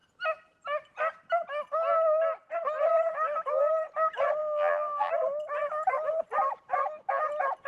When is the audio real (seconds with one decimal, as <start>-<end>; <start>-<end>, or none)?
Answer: 0.0-4.4; 5.1-7.7